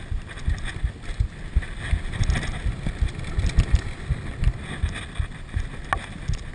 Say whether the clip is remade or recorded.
recorded